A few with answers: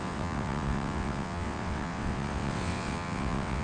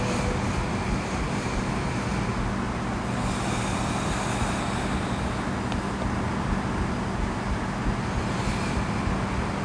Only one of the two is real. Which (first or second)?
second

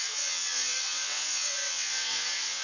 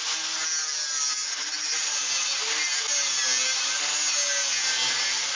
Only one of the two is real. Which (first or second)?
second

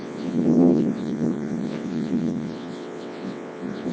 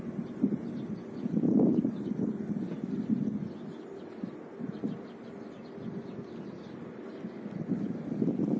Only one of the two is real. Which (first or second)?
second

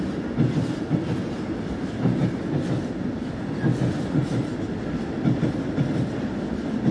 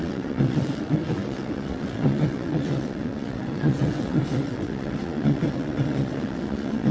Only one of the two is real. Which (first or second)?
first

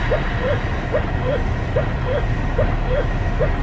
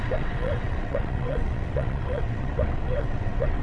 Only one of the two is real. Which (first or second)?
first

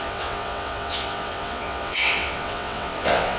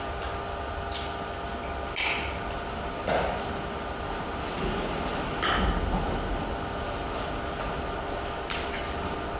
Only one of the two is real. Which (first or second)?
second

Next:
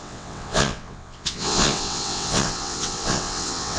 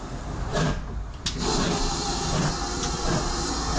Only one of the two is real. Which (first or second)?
second